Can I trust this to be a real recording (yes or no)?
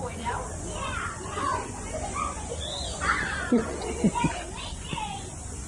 no